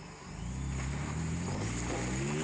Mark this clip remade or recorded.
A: recorded